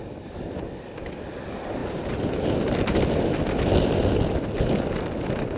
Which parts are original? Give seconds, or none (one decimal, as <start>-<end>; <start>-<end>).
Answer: 0.0-5.6